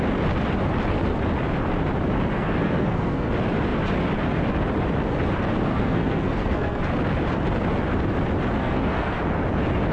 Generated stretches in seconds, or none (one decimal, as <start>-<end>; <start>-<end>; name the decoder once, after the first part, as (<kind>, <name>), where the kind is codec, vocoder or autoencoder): 2.3-3.3 (codec, SNAC); 5.7-6.8; 8.6-9.2